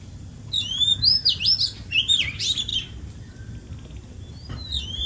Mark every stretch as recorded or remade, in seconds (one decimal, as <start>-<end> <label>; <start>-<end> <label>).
0.0-0.9 remade; 0.9-1.9 recorded; 1.9-2.7 remade; 2.7-4.3 recorded; 4.3-5.1 remade